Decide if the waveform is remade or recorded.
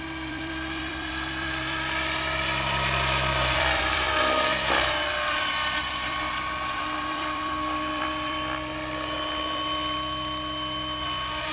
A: remade